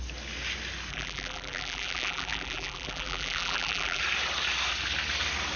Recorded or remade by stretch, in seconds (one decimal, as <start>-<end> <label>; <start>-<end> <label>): 0.0-0.9 recorded; 0.9-4.0 remade; 4.0-5.6 recorded